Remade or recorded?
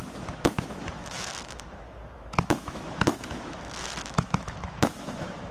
remade